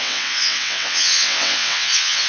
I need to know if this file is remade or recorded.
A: remade